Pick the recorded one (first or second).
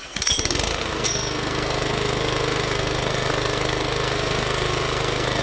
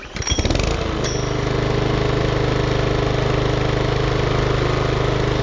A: second